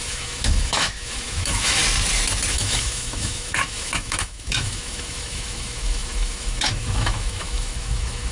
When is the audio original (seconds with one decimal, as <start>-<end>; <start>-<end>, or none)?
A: 1.8-2.5